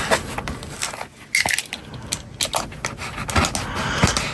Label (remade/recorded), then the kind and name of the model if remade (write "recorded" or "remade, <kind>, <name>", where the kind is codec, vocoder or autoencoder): recorded